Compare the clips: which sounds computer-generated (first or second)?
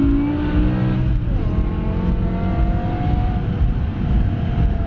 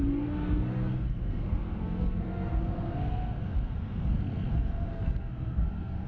second